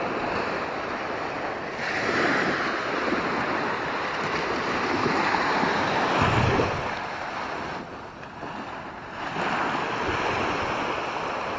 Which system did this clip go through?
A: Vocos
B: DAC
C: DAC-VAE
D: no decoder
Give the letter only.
D